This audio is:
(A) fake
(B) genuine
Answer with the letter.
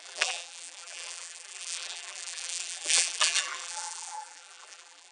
A